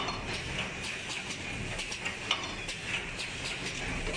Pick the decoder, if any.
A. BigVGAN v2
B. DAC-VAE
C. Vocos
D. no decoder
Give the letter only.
D